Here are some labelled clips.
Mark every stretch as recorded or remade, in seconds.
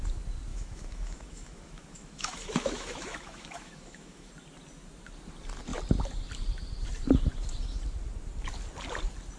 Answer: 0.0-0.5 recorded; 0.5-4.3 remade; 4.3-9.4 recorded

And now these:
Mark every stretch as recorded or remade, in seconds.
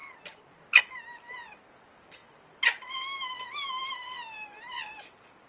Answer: 0.0-5.5 recorded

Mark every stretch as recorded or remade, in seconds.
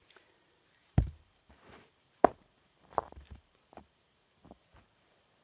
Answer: 0.0-5.4 remade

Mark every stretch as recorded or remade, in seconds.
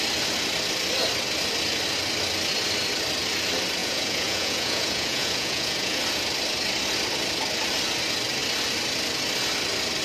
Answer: 0.0-3.8 recorded; 3.8-6.0 remade; 6.0-10.0 recorded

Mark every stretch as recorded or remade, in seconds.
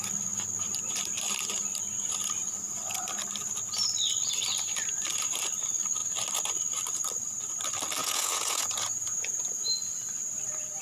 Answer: 0.0-8.0 recorded; 8.0-9.5 remade; 9.5-10.8 recorded